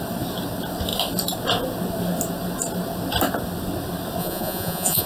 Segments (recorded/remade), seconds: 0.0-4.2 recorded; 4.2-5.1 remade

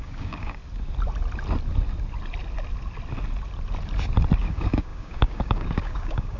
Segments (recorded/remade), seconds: 0.0-0.6 remade; 0.6-4.4 recorded; 4.4-6.4 remade